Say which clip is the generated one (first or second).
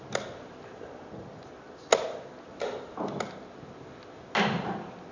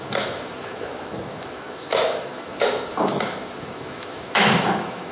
second